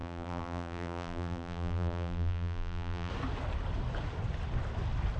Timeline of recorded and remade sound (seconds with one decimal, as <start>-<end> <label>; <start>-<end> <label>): 0.0-3.1 remade; 3.1-5.2 recorded